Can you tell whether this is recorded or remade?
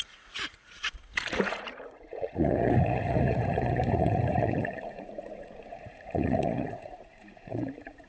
remade